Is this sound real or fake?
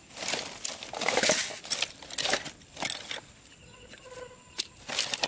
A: real